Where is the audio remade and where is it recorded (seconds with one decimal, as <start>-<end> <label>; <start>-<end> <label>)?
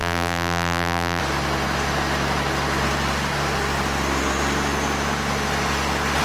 0.0-1.2 remade; 1.2-6.2 recorded